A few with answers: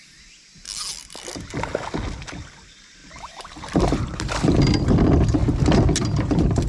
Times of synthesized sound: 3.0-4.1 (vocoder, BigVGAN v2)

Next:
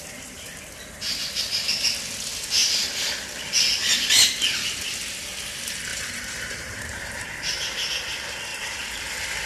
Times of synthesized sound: 5.9-7.9 (vocoder, BigVGAN v2); 8.5-9.0

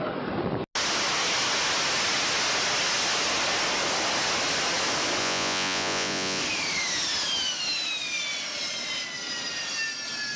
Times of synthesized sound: 5.2-6.4 (vocoder, Vocos)